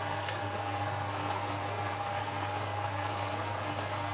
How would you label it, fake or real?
fake